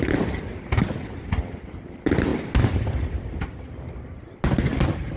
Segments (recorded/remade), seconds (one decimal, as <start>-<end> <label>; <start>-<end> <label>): 0.0-5.2 recorded